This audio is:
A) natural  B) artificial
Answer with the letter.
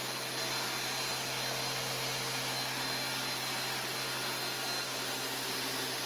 A